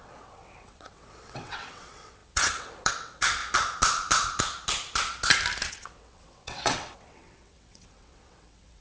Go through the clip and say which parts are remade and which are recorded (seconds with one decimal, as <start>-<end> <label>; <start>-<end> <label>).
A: 0.0-3.4 remade; 3.4-5.7 recorded; 5.7-8.8 remade